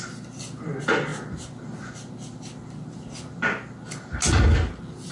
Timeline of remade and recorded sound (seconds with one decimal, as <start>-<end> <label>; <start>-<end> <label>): 0.0-5.1 recorded